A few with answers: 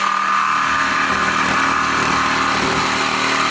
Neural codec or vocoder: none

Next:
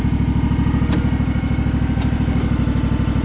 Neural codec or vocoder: none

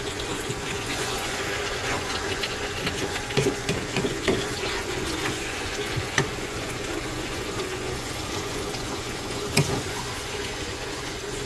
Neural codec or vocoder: vocoder, Vocos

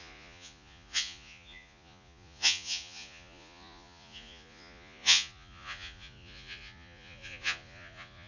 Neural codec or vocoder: vocoder, Vocos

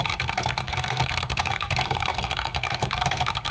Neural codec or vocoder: codec, SNAC